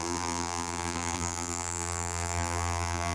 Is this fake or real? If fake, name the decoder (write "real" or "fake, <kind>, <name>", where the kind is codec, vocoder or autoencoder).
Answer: fake, vocoder, BigVGAN v2